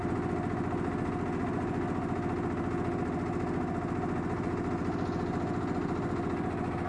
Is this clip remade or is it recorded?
recorded